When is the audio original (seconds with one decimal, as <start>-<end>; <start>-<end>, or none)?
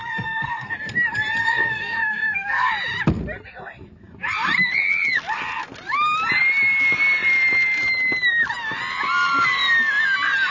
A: 0.7-1.4; 2.7-10.5